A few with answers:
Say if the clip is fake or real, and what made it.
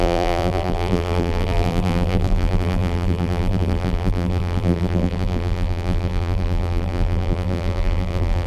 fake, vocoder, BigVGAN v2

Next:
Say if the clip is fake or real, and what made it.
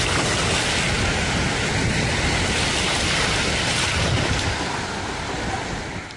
real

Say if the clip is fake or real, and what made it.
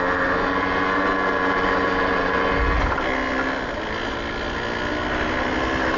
real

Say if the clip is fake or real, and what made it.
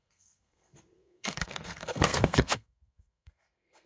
fake, codec, SNAC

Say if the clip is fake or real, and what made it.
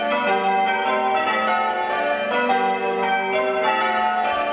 real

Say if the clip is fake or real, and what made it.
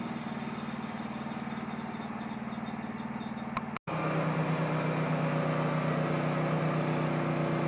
real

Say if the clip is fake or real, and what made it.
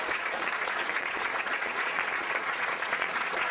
fake, vocoder, Vocos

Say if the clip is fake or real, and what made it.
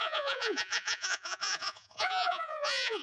fake, vocoder, Vocos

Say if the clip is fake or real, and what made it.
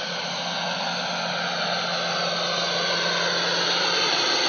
real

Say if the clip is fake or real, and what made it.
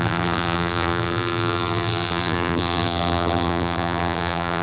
fake, vocoder, BigVGAN v2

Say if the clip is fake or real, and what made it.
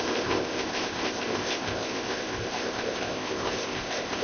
fake, codec, ZipCodec